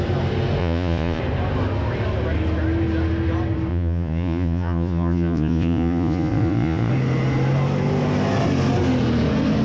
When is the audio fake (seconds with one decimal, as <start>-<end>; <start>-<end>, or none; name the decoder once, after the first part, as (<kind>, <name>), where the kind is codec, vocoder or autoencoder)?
0.6-1.2 (vocoder, Vocos); 3.7-6.9